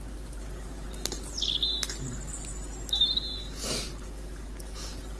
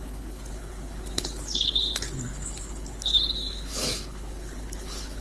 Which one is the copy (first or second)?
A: second